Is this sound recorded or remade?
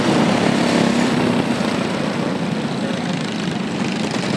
recorded